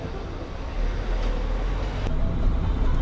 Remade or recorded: recorded